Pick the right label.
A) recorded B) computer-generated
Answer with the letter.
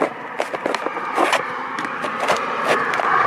A